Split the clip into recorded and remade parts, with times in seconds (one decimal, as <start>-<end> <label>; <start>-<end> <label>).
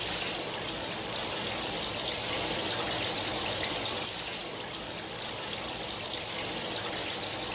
0.0-7.5 recorded